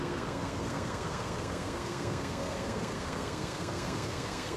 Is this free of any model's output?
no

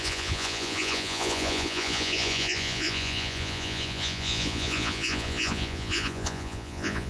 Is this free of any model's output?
no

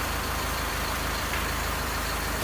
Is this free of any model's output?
no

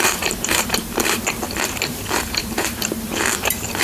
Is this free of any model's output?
no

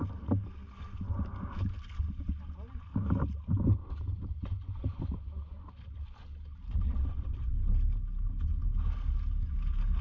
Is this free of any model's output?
yes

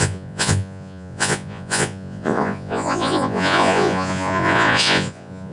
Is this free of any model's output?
no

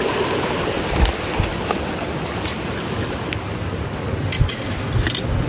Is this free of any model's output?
yes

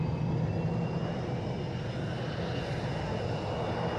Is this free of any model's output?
yes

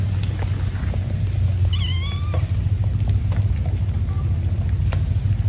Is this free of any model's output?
yes